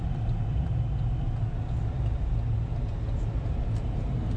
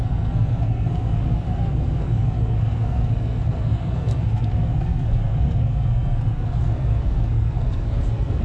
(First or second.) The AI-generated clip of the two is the second